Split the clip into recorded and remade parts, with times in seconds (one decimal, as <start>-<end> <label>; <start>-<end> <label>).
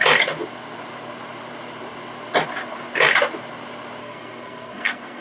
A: 0.0-4.0 recorded; 4.0-5.2 remade